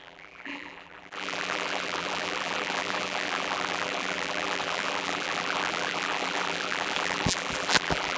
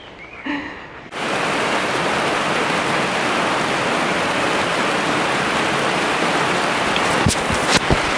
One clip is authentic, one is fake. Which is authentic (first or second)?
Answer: second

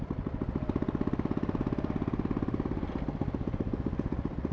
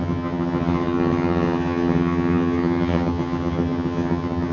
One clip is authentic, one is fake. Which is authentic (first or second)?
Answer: first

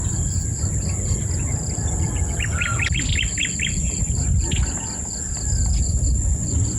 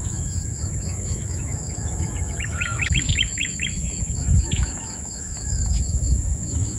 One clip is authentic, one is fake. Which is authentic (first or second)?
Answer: first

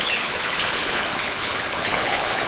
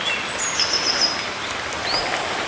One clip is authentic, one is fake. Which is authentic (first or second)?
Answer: second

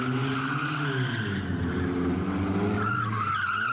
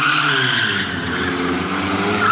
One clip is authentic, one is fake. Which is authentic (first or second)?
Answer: first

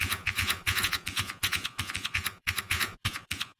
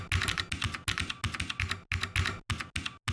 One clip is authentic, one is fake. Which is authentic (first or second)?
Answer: second